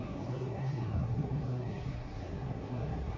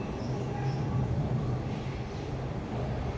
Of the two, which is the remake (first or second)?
first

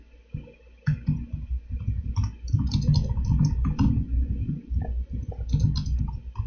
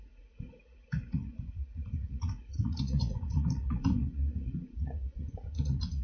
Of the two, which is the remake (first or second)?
second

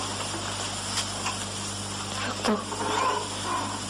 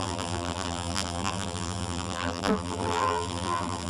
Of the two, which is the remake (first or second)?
second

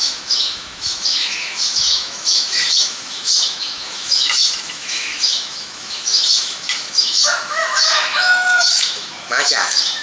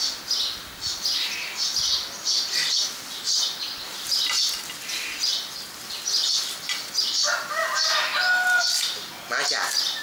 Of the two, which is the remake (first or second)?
first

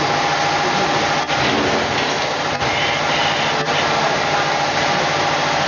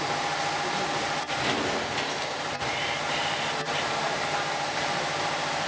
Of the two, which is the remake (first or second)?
second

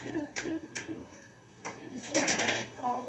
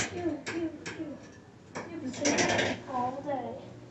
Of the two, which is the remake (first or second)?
first